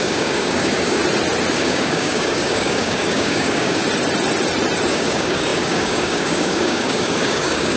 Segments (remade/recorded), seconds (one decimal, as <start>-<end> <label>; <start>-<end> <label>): 0.0-1.0 remade; 1.0-1.5 recorded; 1.5-3.8 remade; 3.8-4.9 recorded; 4.9-7.8 remade